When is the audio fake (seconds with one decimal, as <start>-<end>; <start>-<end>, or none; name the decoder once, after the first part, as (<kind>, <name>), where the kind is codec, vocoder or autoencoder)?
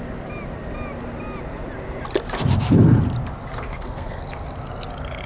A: 3.7-4.2 (codec, SNAC)